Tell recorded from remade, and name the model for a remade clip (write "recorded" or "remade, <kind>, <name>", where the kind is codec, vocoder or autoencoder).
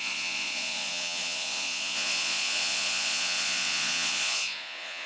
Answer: remade, vocoder, Vocos